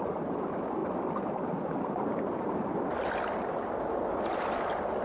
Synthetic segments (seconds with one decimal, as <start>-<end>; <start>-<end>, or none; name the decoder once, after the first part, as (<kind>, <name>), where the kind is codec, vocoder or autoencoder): none